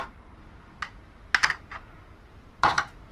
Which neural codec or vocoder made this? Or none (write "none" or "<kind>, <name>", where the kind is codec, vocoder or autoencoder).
vocoder, BigVGAN v2